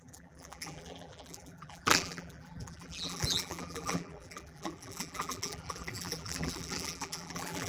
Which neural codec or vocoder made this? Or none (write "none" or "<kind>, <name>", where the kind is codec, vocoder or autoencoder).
vocoder, BigVGAN v2